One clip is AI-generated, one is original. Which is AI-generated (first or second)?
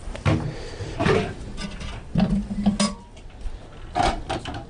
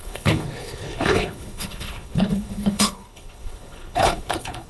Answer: second